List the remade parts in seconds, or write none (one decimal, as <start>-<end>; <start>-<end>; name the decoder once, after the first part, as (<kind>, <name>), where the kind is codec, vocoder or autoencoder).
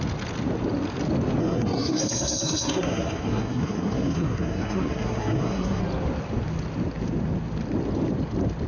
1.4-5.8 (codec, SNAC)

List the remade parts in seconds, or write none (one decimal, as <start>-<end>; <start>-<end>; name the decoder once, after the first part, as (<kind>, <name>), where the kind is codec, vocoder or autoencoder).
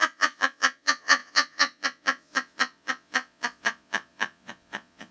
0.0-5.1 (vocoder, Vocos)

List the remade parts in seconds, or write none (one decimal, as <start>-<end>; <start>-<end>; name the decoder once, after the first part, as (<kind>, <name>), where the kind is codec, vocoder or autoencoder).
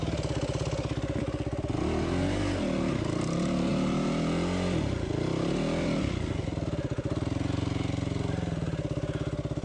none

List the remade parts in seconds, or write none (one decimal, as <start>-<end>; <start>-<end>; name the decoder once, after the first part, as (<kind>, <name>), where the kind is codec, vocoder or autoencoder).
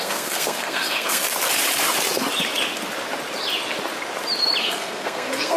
0.0-1.2 (codec, SNAC); 4.6-5.6